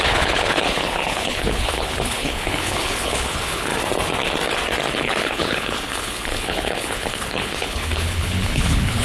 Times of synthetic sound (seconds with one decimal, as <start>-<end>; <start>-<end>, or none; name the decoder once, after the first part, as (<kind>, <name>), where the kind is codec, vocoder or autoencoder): 0.0-3.7 (codec, HILCodec); 5.0-9.0